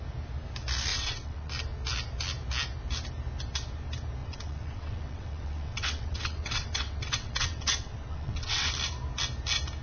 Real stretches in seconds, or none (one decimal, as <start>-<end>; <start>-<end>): 0.0-0.9; 1.5-4.2; 8.7-9.8